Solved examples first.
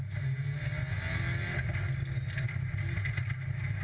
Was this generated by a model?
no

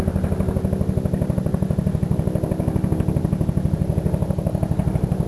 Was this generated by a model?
no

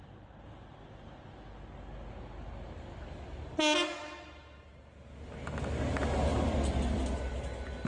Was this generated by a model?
no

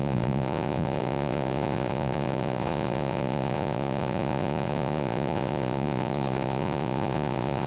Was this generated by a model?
yes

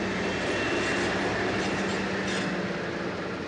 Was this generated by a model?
no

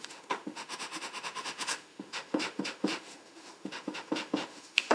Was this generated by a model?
yes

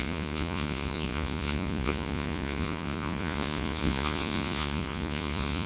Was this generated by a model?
yes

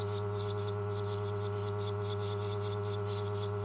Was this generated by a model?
no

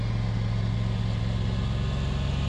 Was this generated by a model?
no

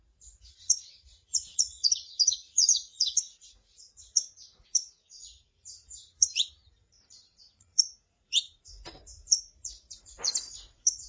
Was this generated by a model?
yes